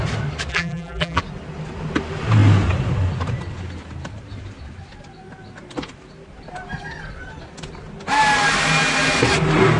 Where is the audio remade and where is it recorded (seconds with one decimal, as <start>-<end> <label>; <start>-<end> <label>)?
0.0-0.5 recorded; 0.5-1.2 remade; 1.2-9.8 recorded